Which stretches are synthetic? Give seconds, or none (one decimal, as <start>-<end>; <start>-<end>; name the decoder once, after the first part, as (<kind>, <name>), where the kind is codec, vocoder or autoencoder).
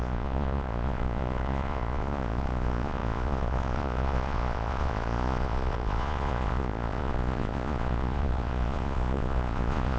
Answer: 0.0-10.0 (vocoder, Vocos)